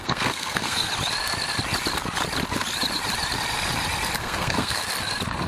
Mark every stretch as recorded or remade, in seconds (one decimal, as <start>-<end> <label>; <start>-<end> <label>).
0.0-0.9 remade; 0.9-4.2 recorded; 4.2-4.8 remade; 4.8-5.5 recorded